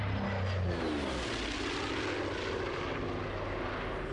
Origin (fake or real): real